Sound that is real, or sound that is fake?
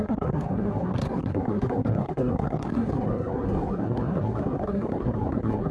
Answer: fake